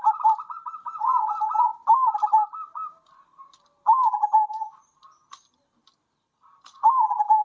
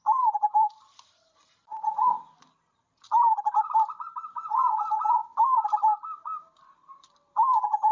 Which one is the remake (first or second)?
second